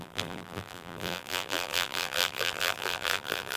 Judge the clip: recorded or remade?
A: remade